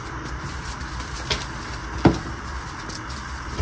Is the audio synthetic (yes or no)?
no